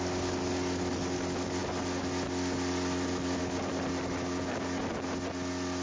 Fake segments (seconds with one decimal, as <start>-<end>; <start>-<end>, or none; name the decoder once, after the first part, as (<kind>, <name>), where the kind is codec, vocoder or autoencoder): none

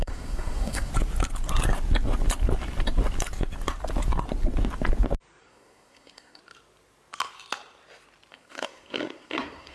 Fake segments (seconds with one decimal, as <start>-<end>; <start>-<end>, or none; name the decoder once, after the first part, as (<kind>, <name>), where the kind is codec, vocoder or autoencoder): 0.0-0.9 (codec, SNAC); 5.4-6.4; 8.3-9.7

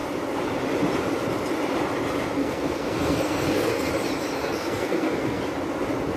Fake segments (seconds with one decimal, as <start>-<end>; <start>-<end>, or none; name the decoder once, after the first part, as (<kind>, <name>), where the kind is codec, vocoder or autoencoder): 2.4-3.9 (codec, SNAC); 4.4-5.4

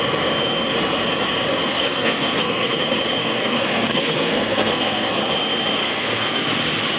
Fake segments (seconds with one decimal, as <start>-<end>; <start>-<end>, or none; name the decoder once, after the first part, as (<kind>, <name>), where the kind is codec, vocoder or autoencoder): 1.7-2.7 (codec, SNAC); 3.2-5.2; 5.8-6.4

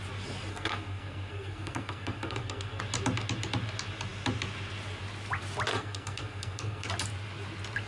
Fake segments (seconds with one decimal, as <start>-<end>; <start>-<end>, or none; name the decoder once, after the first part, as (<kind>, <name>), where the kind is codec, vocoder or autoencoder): 0.5-2.8 (codec, SNAC); 5.7-6.9